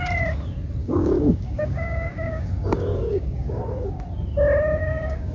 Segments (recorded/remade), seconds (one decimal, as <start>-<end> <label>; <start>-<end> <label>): 0.0-0.8 recorded; 0.8-3.6 remade; 3.6-4.8 recorded; 4.8-5.3 remade